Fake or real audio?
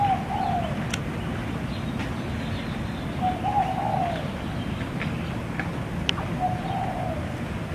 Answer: real